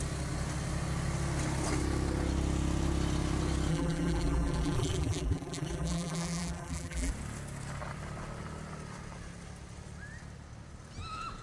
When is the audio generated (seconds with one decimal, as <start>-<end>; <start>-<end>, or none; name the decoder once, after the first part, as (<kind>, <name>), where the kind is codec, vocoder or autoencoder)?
3.7-7.1 (vocoder, BigVGAN v2)